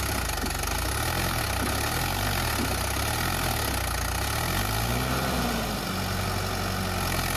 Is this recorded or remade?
recorded